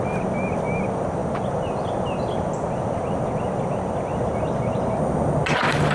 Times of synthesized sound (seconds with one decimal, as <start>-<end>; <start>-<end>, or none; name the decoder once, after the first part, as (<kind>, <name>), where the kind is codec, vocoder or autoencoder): none